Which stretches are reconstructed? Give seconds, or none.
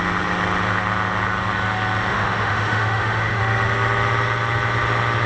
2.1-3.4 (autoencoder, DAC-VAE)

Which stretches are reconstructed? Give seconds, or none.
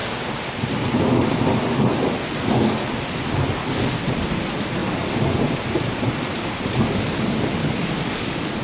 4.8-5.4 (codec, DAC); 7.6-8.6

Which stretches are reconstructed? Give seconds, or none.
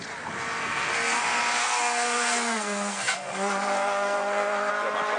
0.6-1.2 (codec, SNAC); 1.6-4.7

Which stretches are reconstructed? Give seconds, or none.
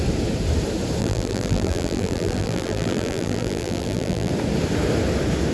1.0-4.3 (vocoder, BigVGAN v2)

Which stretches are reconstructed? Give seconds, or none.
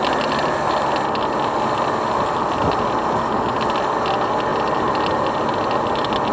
none